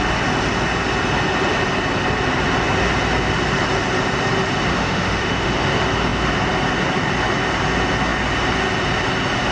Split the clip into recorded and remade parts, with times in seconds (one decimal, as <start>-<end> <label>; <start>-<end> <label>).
0.0-4.7 recorded; 4.7-5.5 remade; 5.5-9.5 recorded